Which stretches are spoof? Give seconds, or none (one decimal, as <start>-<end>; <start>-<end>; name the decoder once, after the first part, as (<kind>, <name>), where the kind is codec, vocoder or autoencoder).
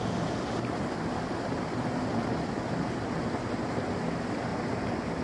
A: none